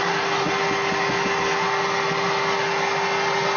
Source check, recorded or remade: recorded